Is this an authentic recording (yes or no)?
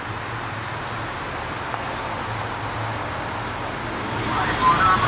yes